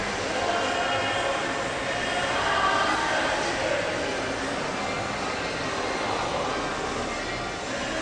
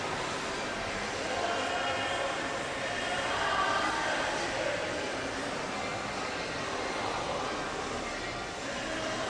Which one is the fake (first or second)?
second